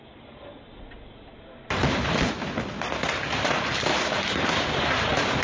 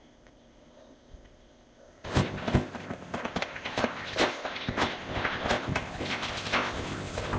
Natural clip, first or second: first